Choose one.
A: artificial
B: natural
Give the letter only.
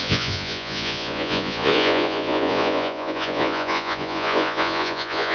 A